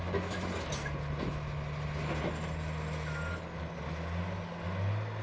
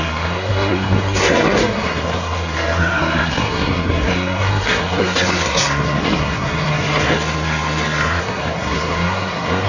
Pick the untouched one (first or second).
first